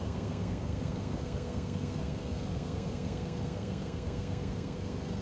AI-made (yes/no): yes